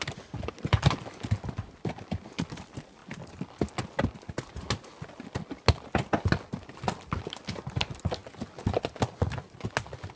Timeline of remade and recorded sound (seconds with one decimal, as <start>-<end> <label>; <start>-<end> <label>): 0.0-10.2 recorded